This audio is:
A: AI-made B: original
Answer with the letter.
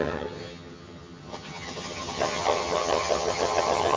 A